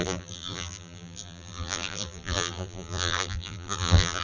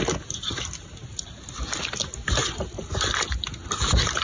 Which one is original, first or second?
second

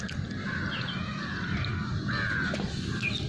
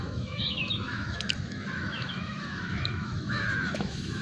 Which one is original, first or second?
first